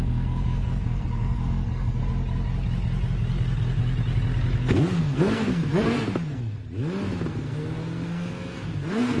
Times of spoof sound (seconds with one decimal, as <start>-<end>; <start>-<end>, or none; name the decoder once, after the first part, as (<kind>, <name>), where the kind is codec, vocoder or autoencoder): 0.0-2.0 (codec, SNAC); 4.6-6.6; 7.3-9.2